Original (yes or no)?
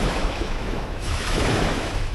no